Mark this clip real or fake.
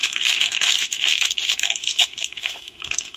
fake